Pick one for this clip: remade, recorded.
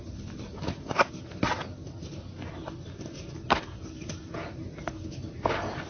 recorded